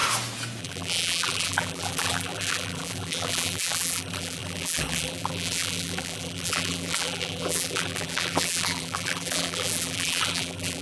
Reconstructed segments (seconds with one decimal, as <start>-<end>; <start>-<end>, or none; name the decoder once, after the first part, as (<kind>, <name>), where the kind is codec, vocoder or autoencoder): 0.6-10.8 (vocoder, BigVGAN v2)